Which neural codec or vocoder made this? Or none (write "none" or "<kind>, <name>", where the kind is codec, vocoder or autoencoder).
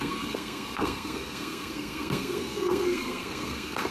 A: codec, SNAC